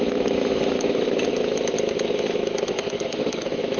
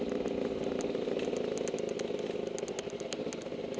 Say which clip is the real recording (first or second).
second